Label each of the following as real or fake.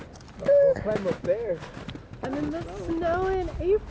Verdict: real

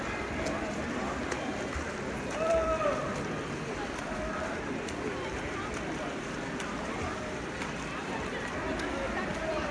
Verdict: fake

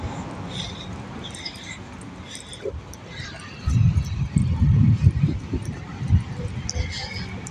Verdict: real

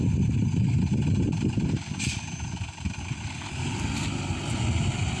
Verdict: real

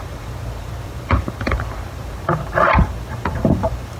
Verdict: fake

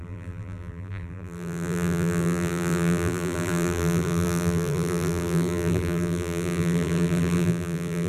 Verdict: fake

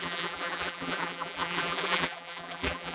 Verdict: fake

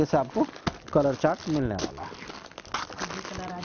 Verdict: real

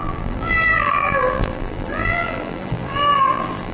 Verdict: fake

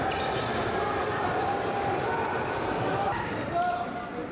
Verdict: real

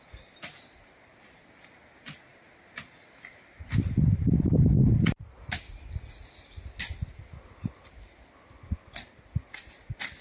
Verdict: real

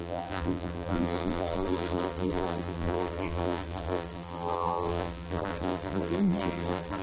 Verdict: fake